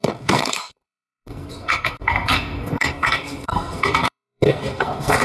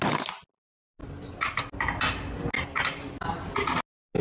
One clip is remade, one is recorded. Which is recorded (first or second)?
second